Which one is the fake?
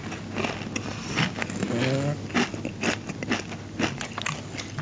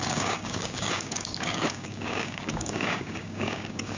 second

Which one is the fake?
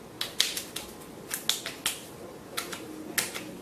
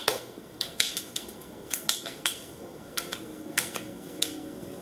second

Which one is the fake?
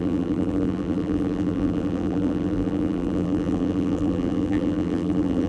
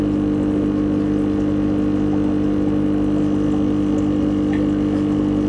first